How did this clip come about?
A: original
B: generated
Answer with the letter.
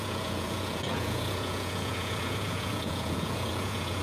B